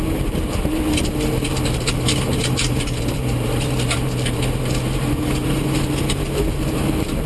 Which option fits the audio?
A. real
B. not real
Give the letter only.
B